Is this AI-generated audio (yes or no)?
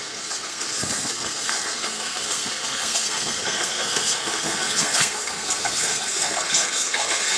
yes